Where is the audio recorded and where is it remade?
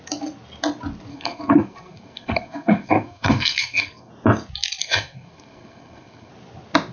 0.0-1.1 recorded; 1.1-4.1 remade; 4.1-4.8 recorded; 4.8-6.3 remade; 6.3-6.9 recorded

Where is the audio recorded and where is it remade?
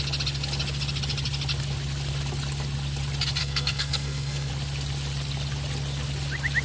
0.0-3.4 recorded; 3.4-4.5 remade; 4.5-6.6 recorded